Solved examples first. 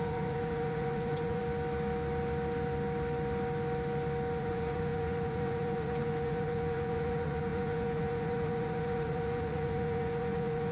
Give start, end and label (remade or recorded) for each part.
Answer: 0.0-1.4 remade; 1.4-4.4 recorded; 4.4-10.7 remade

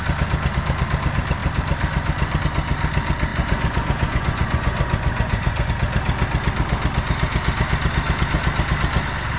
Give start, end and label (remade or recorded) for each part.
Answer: 0.0-3.3 recorded; 3.3-5.7 remade; 5.7-9.4 recorded

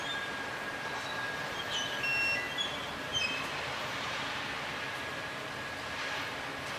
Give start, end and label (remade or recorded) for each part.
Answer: 0.0-3.1 recorded; 3.1-4.4 remade; 4.4-6.8 recorded

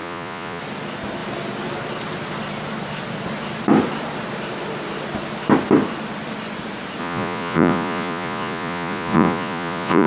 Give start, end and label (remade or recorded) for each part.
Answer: 0.0-0.6 remade; 0.6-7.0 recorded; 7.0-10.1 remade

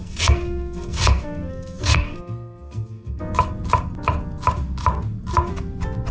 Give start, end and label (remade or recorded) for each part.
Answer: 0.0-3.2 remade; 3.2-6.1 recorded

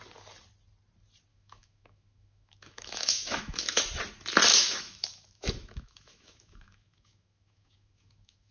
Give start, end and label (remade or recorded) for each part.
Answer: 0.0-1.3 recorded; 1.3-3.8 remade; 3.8-4.5 recorded; 4.5-8.5 remade

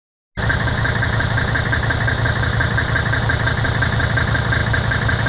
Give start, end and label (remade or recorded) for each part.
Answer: 0.0-5.3 recorded

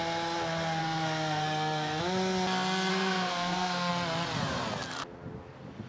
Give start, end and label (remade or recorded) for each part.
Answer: 0.0-0.8 recorded; 0.8-2.0 remade; 2.0-2.9 recorded; 2.9-3.9 remade; 3.9-5.9 recorded